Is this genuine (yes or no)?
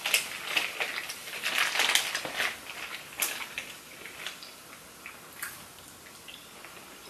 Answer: yes